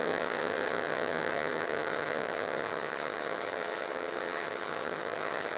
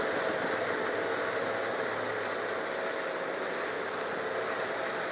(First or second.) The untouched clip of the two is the second